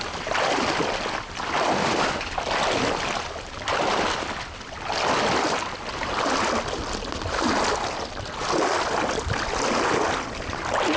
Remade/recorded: recorded